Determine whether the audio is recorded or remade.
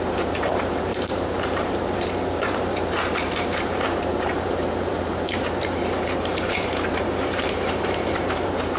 remade